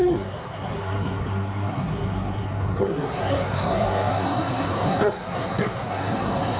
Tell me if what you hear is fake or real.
fake